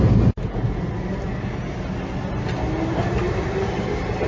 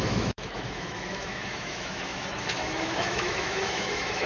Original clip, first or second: first